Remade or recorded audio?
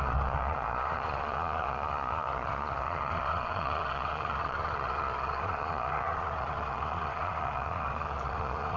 remade